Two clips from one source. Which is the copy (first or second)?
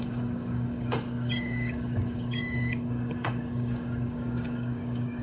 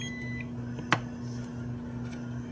first